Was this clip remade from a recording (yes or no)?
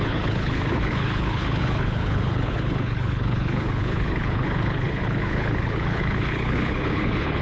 yes